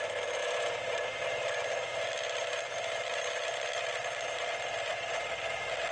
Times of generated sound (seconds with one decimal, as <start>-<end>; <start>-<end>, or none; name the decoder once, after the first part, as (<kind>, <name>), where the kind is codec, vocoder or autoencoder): none